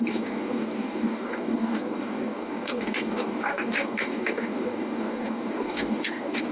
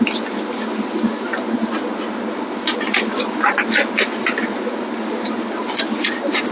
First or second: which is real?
second